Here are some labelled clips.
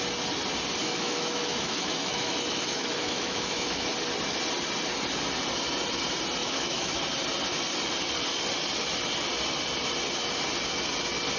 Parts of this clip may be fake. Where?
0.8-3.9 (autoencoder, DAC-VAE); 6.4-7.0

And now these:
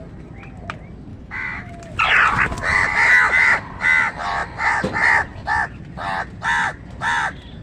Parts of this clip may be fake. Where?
1.1-1.7 (autoencoder, DAC-VAE)

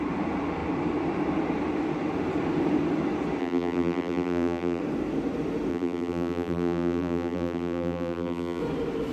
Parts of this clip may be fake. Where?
3.4-4.8 (vocoder, BigVGAN v2); 5.7-8.6

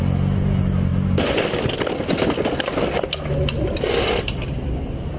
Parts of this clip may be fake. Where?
none

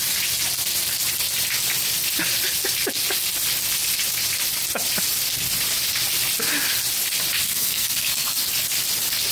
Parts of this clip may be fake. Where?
7.4-8.4 (codec, SNAC)